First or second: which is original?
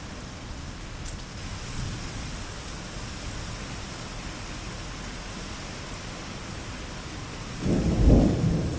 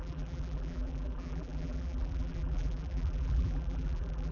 first